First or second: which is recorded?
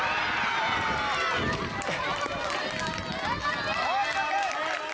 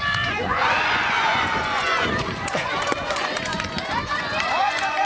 first